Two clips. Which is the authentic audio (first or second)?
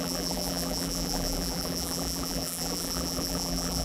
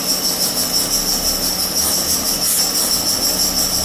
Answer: second